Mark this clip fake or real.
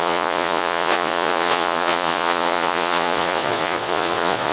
fake